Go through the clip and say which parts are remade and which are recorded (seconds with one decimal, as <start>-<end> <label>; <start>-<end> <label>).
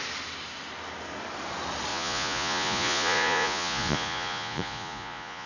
0.0-1.9 recorded; 1.9-5.5 remade